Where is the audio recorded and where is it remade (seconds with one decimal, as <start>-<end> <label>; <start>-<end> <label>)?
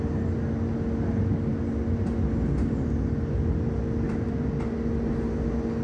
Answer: 0.0-5.8 recorded